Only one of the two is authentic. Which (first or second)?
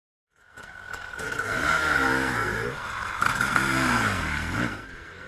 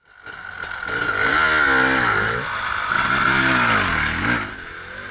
second